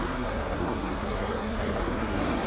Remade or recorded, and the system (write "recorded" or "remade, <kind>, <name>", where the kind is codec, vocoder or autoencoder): remade, codec, SNAC